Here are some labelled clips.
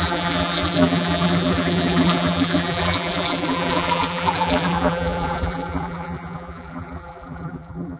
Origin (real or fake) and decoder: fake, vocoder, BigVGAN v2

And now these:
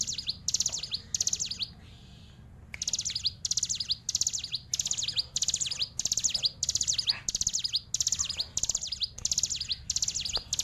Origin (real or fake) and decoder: real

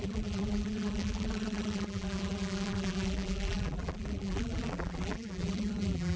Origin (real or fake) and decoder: fake, vocoder, BigVGAN v2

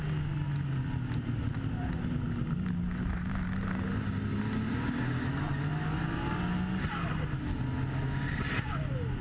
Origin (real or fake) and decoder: real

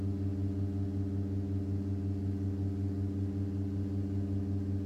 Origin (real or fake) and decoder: real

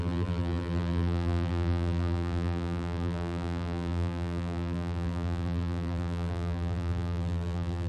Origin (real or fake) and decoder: fake, vocoder, BigVGAN v2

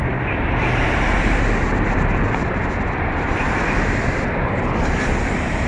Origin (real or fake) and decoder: fake, vocoder, BigVGAN v2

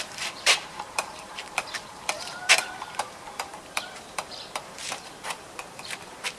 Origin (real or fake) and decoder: fake, vocoder, BigVGAN v2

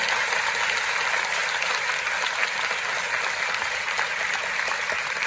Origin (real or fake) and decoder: real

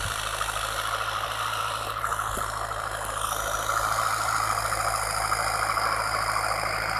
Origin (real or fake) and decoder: fake, vocoder, BigVGAN v2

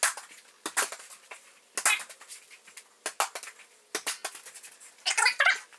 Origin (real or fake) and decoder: real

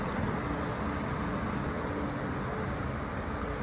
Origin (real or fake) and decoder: real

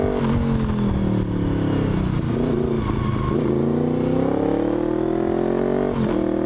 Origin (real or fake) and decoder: real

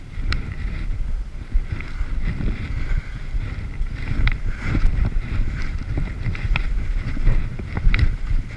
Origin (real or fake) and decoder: fake, vocoder, BigVGAN v2